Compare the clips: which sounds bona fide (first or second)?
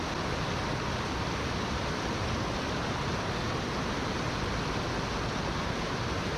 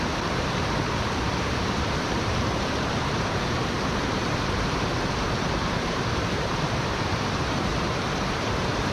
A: first